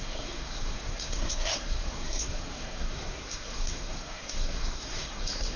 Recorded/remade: remade